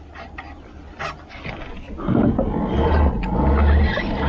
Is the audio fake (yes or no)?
no